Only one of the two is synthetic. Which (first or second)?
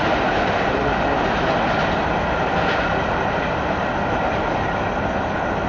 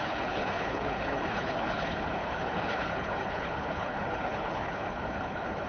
second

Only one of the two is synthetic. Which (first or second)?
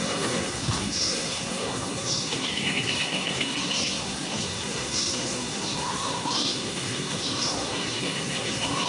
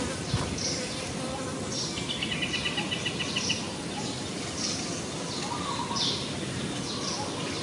first